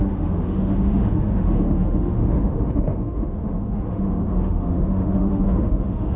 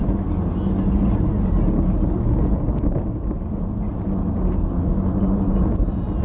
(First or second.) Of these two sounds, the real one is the second